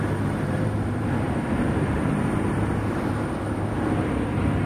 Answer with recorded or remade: remade